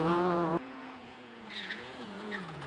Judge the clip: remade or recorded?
remade